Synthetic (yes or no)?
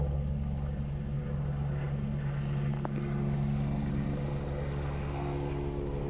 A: no